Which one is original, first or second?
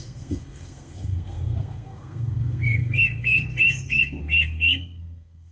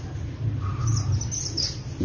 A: second